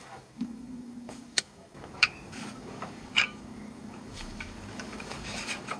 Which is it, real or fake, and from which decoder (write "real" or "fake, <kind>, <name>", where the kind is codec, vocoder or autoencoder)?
fake, codec, DAC